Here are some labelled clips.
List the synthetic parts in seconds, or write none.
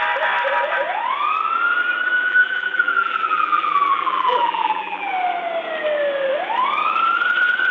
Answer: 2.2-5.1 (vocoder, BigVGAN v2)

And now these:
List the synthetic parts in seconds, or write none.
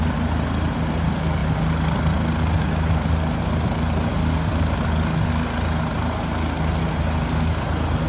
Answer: none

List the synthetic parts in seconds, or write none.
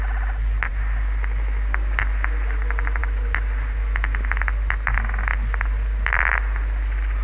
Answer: none